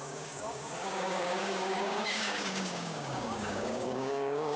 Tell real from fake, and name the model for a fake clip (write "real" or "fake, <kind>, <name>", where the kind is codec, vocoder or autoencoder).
fake, codec, DAC